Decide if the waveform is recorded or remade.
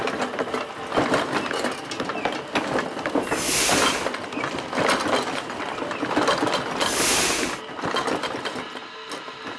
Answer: recorded